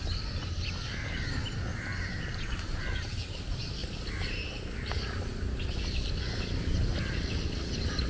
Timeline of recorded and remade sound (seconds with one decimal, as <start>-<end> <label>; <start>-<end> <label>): 0.0-1.7 recorded; 1.7-3.1 remade; 3.1-3.8 recorded; 3.8-4.5 remade; 4.5-8.1 recorded